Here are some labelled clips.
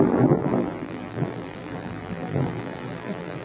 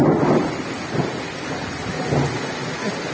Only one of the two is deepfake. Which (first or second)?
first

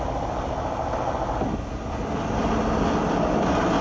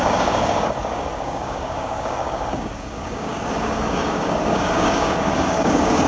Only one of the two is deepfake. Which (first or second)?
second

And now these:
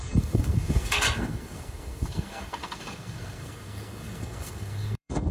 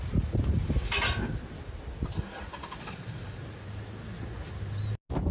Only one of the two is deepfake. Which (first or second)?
first